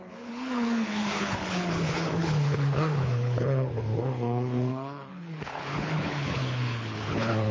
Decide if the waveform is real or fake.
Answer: fake